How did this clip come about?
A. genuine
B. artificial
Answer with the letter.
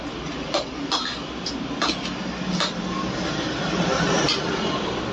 A